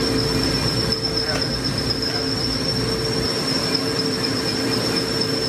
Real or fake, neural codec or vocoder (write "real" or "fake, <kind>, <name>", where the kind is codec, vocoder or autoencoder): fake, vocoder, BigVGAN v2